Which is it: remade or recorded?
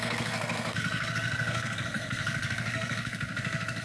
remade